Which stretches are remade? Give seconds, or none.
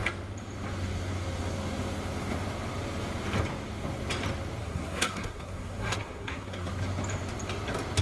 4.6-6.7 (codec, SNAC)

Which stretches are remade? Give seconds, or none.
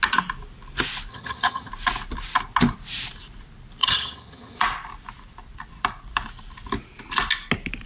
1.1-1.7 (vocoder, HiFi-GAN); 3.8-4.6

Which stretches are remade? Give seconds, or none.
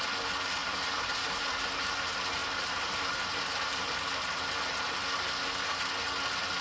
0.6-1.4 (vocoder, BigVGAN v2); 2.4-4.9